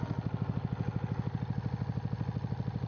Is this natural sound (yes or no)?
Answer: yes